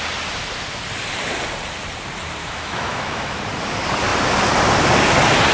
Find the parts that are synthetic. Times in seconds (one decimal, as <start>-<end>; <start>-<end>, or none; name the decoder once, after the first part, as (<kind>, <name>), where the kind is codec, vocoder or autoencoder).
2.4-3.4 (autoencoder, DAC-VAE)